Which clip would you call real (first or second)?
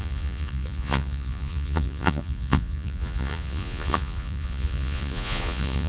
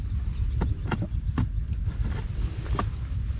second